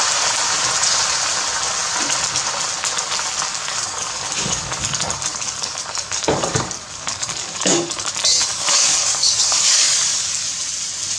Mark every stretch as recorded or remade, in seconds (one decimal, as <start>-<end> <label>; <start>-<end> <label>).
0.0-3.5 recorded; 3.5-8.1 remade; 8.1-8.5 recorded; 8.5-10.5 remade; 10.5-11.2 recorded